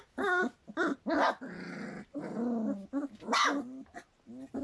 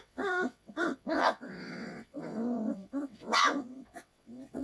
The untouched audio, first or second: first